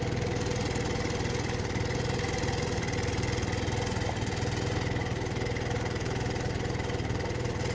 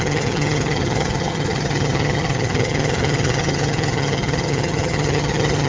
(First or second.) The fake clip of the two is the second